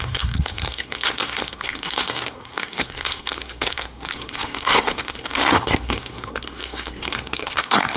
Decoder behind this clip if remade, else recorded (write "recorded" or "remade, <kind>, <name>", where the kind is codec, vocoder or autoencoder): remade, codec, SNAC